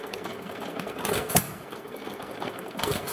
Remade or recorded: remade